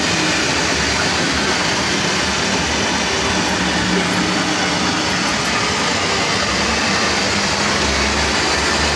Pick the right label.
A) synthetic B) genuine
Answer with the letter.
B